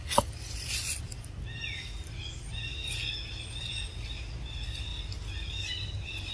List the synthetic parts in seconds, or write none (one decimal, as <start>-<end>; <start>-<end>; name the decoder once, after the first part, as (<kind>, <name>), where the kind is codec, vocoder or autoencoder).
none